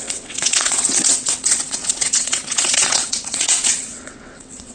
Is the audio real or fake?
fake